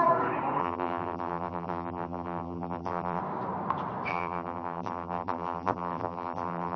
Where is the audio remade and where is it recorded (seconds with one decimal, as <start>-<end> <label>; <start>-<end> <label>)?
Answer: 0.0-0.6 recorded; 0.6-3.2 remade; 3.2-4.1 recorded; 4.1-6.8 remade